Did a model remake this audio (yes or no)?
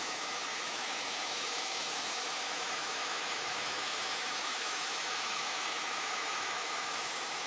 yes